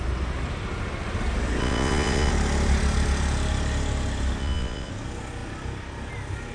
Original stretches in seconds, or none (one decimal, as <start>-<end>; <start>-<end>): 0.0-1.6; 2.3-4.4; 4.9-6.5